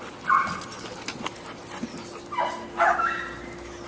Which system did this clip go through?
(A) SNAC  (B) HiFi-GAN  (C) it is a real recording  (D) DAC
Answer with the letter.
C